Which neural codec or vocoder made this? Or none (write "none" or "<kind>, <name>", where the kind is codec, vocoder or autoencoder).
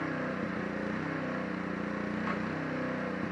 none